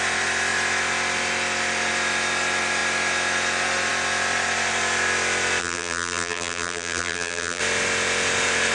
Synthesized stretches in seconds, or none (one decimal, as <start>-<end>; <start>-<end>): 5.6-7.6